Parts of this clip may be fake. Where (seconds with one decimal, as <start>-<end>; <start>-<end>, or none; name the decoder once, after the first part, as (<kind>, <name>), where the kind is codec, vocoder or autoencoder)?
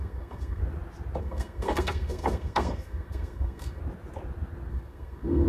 0.0-0.6 (codec, SNAC); 1.2-3.8; 4.7-5.5